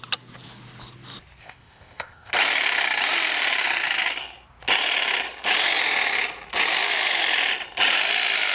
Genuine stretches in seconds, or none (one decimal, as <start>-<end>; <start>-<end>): 0.0-1.4; 2.3-8.5